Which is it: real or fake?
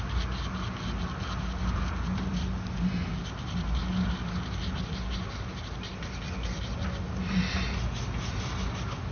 real